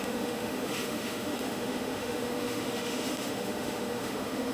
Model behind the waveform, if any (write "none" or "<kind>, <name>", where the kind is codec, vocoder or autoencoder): autoencoder, DAC-VAE